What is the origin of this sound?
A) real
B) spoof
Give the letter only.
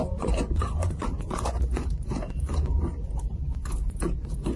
B